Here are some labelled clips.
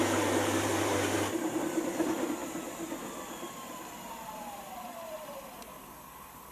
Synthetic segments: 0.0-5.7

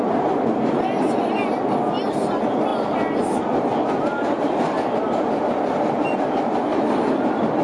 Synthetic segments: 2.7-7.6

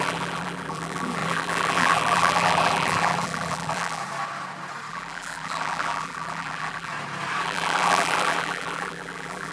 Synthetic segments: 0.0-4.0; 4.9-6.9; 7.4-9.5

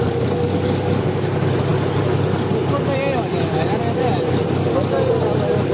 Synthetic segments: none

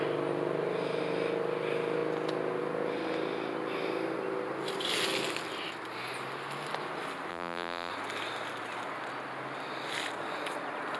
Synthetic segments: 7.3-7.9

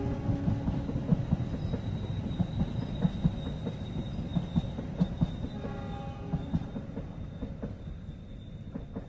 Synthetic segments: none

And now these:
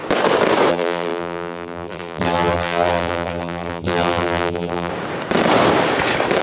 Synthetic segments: 0.7-4.9

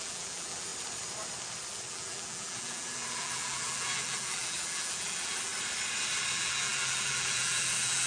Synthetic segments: 0.0-0.7; 1.9-5.5; 6.3-8.1